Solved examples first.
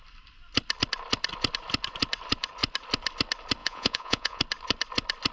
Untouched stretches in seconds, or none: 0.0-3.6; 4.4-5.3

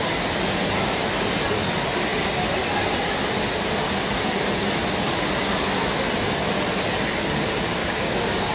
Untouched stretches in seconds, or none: 0.0-7.8

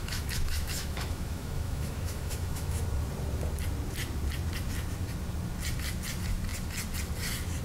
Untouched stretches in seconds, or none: 2.8-7.6

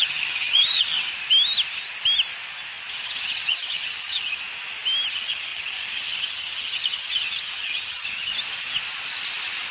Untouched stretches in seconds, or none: 1.1-2.9; 4.4-5.1; 8.3-9.7

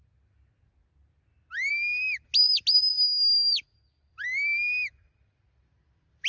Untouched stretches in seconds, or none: 0.0-6.3

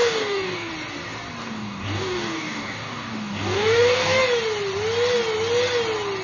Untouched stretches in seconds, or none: 0.7-1.4; 4.2-6.2